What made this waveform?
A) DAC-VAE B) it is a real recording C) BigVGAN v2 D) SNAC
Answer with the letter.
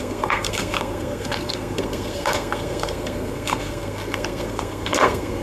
D